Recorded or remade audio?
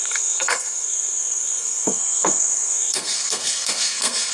remade